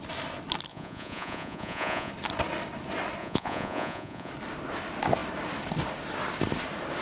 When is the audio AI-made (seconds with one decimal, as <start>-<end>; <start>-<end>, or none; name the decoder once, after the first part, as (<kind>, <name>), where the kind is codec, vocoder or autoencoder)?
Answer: 0.7-2.1 (vocoder, Vocos); 3.2-4.3

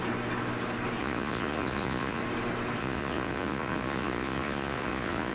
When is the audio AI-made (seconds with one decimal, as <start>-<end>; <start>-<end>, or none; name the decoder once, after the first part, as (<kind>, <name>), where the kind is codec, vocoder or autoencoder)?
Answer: 1.0-2.2 (vocoder, Vocos); 2.8-5.3

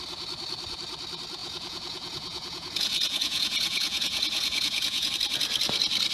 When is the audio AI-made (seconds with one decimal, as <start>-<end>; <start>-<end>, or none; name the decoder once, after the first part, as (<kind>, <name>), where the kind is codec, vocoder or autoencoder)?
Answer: 1.4-5.1 (vocoder, Vocos)